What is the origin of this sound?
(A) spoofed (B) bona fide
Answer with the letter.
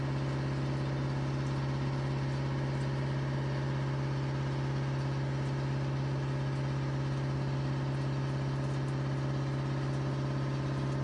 B